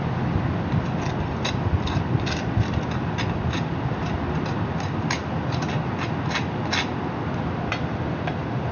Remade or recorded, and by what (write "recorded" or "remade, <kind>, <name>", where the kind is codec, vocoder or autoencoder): recorded